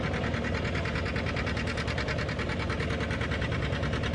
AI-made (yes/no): no